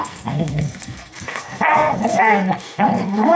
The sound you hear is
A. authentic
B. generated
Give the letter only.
B